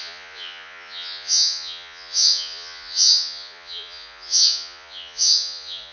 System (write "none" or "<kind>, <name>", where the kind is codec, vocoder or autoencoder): vocoder, Vocos